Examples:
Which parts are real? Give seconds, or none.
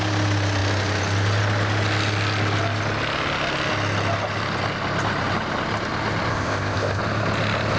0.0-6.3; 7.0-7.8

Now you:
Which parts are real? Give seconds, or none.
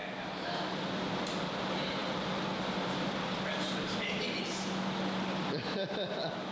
0.0-6.5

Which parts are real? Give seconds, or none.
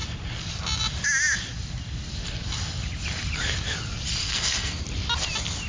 0.0-4.2; 4.8-5.7